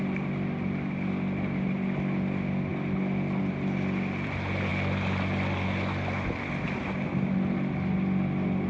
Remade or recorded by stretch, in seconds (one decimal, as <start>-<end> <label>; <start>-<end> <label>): 0.0-8.7 recorded

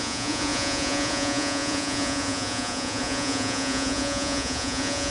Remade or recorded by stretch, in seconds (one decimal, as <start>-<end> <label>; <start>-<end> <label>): 0.0-5.1 remade

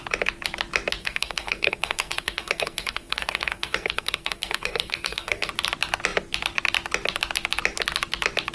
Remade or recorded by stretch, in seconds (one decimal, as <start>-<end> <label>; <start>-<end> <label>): 0.0-1.0 recorded; 1.0-5.5 remade; 5.5-8.5 recorded

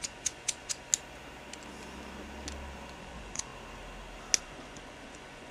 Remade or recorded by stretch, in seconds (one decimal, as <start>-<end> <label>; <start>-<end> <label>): 0.0-0.9 remade; 0.9-3.0 recorded; 3.0-3.5 remade; 3.5-4.4 recorded; 4.4-5.5 remade